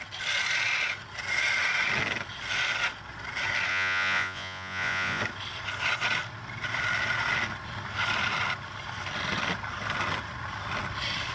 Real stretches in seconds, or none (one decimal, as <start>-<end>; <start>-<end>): 0.0-3.7; 5.2-11.3